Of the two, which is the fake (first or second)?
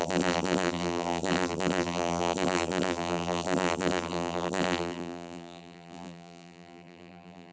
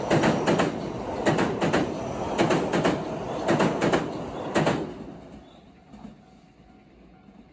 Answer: first